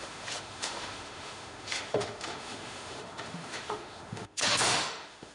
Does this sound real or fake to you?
fake